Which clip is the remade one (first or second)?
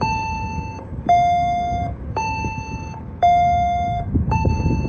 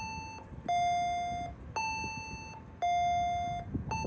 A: first